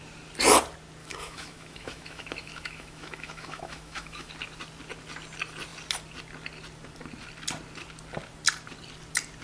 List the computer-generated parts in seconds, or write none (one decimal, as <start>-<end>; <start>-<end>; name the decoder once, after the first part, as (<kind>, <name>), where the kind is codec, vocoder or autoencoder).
1.0-4.3 (autoencoder, DAC-VAE)